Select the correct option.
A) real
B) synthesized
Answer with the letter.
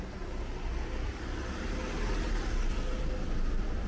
A